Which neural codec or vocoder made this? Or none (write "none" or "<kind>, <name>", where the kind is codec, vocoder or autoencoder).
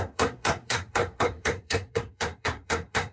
codec, SNAC